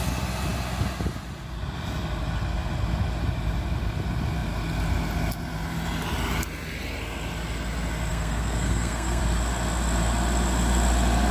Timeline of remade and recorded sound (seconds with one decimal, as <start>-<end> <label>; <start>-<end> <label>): 0.0-8.1 recorded; 8.1-9.2 remade; 9.2-11.3 recorded